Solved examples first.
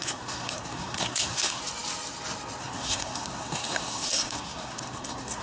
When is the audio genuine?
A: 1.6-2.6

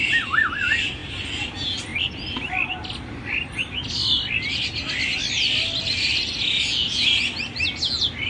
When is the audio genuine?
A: 0.0-8.3

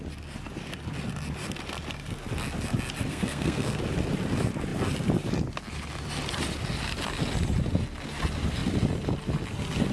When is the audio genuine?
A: 0.0-3.1; 3.8-9.9

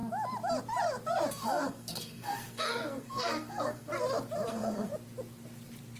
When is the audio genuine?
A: 0.0-1.3; 3.9-4.5; 4.9-6.0